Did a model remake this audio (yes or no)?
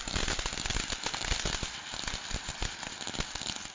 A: no